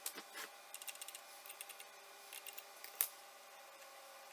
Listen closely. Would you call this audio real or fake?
real